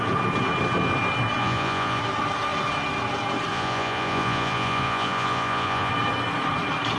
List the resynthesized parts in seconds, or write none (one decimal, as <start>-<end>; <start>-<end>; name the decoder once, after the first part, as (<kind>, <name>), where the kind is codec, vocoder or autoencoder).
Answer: 1.4-2.0 (vocoder, Vocos); 3.5-5.9